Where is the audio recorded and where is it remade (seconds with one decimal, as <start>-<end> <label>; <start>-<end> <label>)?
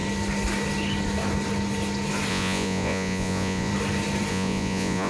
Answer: 0.0-2.3 recorded; 2.3-3.7 remade; 3.7-4.3 recorded; 4.3-5.1 remade